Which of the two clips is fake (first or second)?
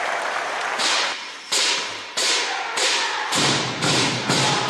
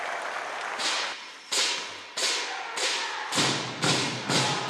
first